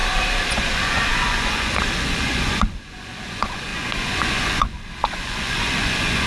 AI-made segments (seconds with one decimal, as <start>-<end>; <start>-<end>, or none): 0.5-6.3